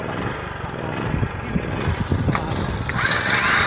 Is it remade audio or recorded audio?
recorded